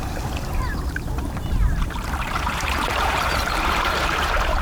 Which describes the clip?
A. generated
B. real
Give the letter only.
A